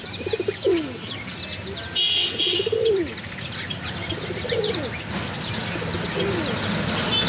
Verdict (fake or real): real